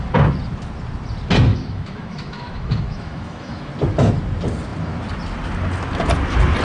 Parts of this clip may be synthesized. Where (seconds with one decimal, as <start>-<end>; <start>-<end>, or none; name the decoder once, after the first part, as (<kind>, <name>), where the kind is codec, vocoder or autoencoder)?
1.5-3.7 (autoencoder, DAC-VAE)